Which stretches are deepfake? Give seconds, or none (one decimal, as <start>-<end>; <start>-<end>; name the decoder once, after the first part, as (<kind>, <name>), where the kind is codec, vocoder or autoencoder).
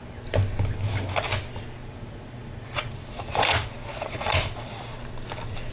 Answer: 1.8-4.9 (vocoder, Vocos)